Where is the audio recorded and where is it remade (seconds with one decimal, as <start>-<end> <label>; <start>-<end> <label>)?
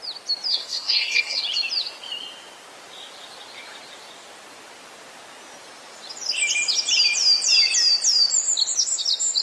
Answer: 0.0-0.5 recorded; 0.5-1.4 remade; 1.4-9.4 recorded